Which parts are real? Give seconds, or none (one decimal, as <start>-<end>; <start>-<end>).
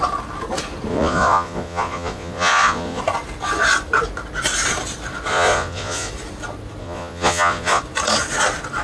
0.0-0.9; 3.0-5.3; 6.1-6.8; 7.8-8.8